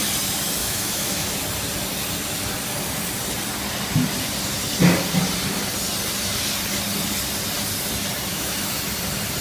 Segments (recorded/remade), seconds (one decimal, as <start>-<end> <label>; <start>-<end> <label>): 0.0-0.6 recorded; 0.6-1.4 remade; 1.4-8.3 recorded; 8.3-8.8 remade; 8.8-9.4 recorded